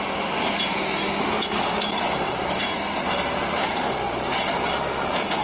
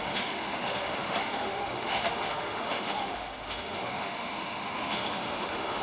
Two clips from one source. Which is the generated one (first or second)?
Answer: second